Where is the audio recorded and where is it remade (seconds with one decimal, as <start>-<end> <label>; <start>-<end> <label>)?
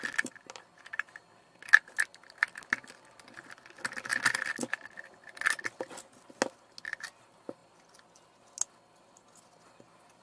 0.0-10.2 recorded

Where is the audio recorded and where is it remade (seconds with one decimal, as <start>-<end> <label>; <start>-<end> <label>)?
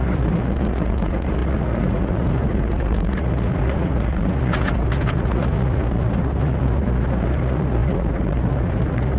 0.0-9.2 remade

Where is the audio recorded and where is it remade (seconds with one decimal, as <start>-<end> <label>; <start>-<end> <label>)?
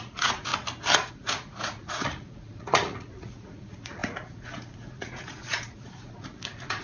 0.0-0.5 remade; 0.5-1.1 recorded; 1.1-6.8 remade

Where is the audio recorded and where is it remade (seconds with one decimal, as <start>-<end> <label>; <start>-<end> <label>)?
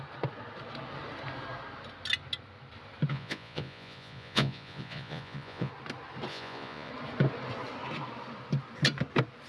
0.0-3.1 recorded; 3.1-5.7 remade; 5.7-6.3 recorded; 6.3-6.9 remade; 6.9-9.5 recorded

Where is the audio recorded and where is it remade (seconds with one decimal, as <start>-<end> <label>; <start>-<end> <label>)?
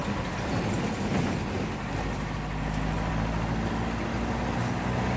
0.0-5.2 recorded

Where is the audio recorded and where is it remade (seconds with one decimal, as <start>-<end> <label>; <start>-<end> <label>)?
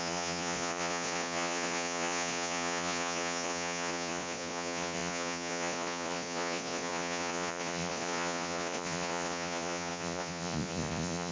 0.0-11.3 remade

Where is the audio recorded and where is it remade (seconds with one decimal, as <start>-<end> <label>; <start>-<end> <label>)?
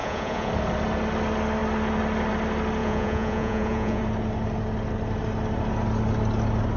0.0-0.5 remade; 0.5-2.8 recorded; 2.8-4.0 remade; 4.0-6.8 recorded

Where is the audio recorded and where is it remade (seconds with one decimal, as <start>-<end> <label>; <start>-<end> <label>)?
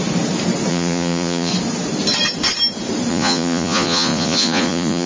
0.0-0.7 recorded; 0.7-1.5 remade; 1.5-3.1 recorded; 3.1-5.1 remade